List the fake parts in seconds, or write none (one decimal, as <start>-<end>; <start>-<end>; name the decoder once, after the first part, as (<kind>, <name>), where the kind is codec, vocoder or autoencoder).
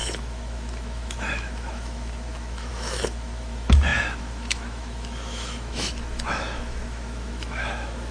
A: 0.0-8.1 (autoencoder, DAC-VAE)